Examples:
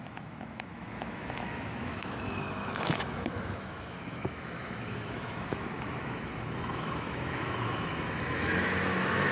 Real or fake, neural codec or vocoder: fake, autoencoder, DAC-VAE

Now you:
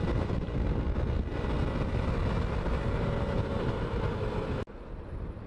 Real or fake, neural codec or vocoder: real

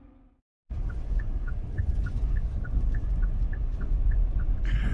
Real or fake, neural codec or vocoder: fake, vocoder, Vocos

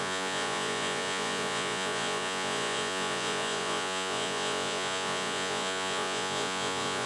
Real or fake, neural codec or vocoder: fake, vocoder, Vocos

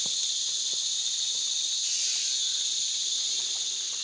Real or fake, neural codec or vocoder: real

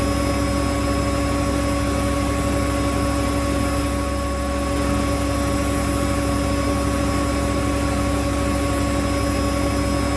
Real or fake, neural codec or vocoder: real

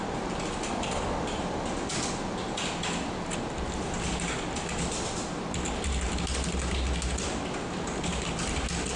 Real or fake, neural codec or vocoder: real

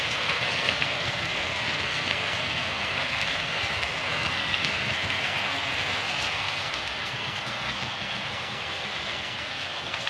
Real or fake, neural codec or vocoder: fake, codec, SNAC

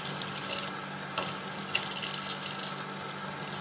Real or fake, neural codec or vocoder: real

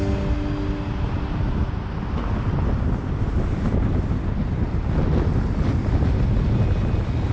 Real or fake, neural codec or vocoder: real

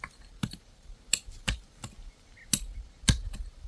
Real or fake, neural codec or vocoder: real